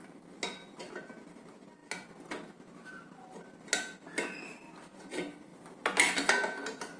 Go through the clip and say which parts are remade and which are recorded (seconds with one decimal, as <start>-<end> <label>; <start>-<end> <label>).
0.0-7.0 recorded